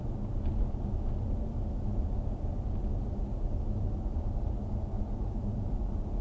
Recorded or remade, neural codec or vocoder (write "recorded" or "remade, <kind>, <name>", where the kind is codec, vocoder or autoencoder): recorded